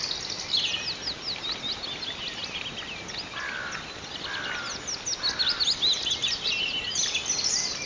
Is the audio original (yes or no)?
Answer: yes